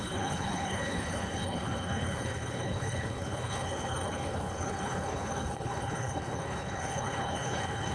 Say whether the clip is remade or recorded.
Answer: remade